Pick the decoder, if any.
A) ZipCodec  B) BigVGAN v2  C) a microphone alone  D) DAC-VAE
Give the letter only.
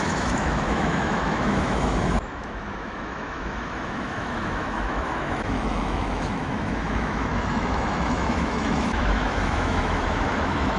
D